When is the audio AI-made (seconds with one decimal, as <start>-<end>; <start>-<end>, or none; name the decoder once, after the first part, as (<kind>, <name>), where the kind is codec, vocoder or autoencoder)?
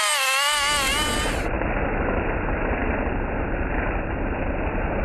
0.9-1.7 (vocoder, BigVGAN v2); 2.8-4.1